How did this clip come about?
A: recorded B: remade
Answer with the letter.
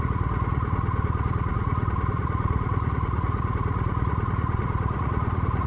B